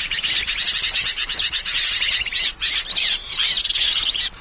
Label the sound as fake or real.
real